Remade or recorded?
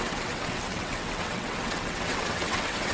remade